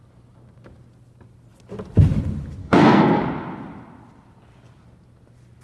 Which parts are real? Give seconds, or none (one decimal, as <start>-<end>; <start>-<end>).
0.0-2.6; 3.2-5.6

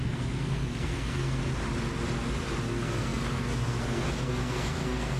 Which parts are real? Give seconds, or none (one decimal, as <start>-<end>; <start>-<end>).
1.4-2.6